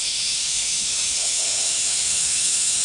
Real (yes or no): no